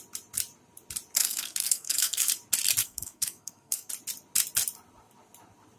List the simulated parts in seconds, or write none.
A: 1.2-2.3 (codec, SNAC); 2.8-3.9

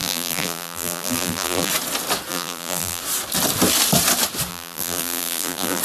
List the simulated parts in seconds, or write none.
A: 0.0-1.7 (vocoder, BigVGAN v2); 2.3-3.0; 4.5-5.8

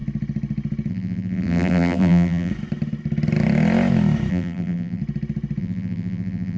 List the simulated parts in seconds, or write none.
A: 0.9-2.5 (vocoder, BigVGAN v2); 4.3-5.0; 5.6-6.6

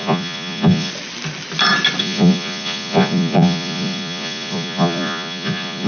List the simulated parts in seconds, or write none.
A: 0.0-0.9 (vocoder, Vocos); 2.0-5.9